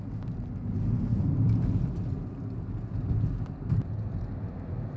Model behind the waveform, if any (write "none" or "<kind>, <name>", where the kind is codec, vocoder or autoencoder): none